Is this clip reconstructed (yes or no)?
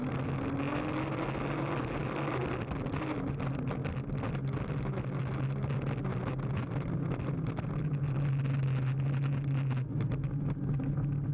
no